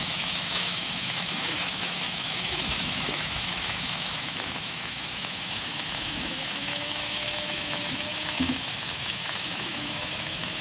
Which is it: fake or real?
fake